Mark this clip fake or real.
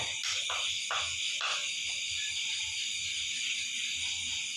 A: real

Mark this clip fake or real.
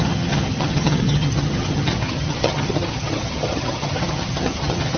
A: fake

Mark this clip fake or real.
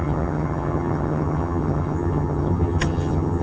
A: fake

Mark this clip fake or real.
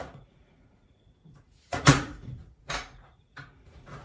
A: fake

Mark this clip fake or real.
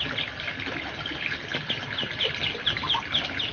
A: real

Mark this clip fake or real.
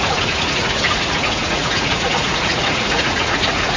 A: fake